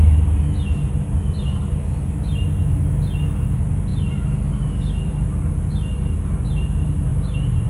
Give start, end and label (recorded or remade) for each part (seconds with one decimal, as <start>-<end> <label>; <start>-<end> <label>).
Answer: 0.0-7.1 recorded; 7.1-7.7 remade